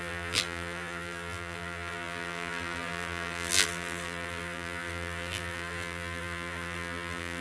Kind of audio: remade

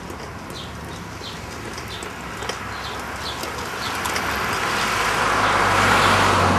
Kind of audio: recorded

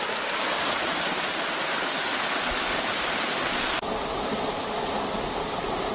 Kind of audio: recorded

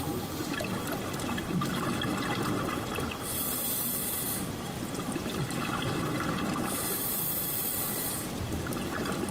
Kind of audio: recorded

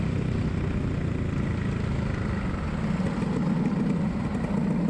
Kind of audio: recorded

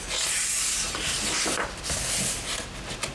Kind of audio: recorded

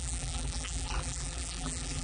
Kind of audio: remade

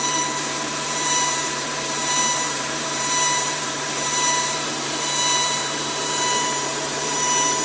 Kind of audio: remade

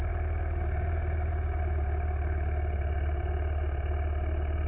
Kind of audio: recorded